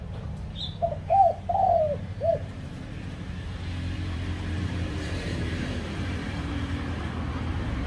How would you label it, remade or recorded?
remade